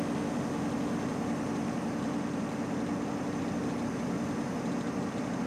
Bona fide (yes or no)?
yes